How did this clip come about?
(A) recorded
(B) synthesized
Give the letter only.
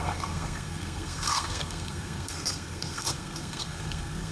B